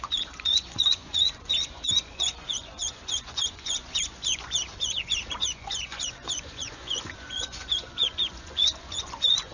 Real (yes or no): no